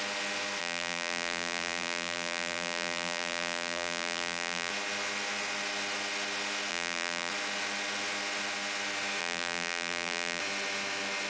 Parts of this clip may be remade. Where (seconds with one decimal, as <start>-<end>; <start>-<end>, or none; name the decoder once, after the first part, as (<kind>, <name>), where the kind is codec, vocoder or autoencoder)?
0.6-4.7 (vocoder, BigVGAN v2); 6.7-7.3; 9.2-10.4